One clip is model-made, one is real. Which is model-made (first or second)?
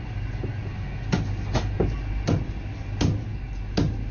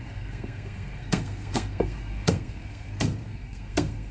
second